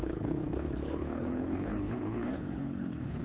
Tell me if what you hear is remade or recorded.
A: remade